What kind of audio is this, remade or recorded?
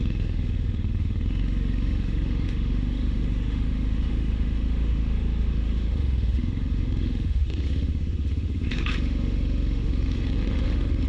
remade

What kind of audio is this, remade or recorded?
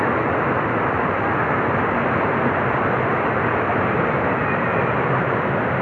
recorded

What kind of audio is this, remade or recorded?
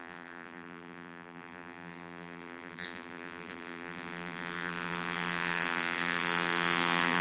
remade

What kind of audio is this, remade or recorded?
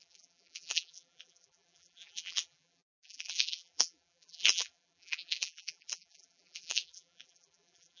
remade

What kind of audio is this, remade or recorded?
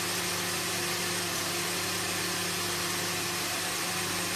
recorded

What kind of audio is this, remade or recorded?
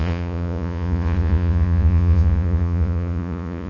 remade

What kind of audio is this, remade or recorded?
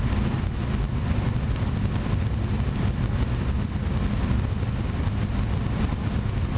recorded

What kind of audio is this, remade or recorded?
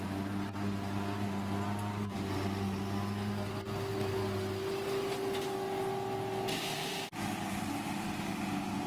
recorded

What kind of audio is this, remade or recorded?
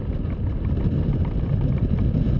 recorded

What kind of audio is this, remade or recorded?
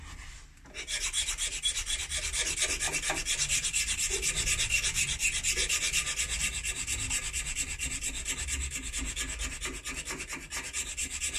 recorded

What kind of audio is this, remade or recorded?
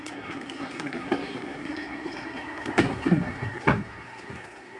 remade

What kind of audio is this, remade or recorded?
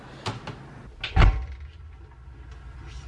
recorded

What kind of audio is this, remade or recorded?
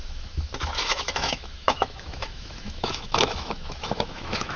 remade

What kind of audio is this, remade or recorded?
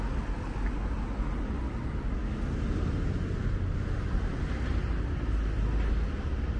recorded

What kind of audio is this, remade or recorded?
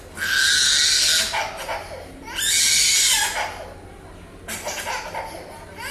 recorded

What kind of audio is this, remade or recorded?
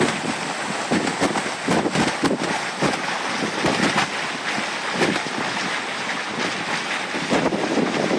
recorded